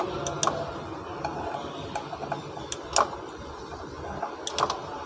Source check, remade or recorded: recorded